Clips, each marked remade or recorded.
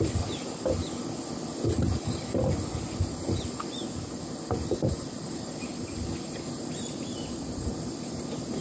recorded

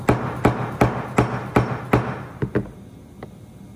recorded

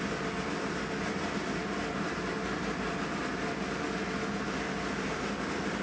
recorded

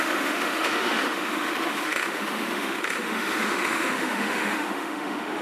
remade